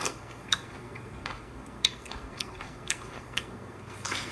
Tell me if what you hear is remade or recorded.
remade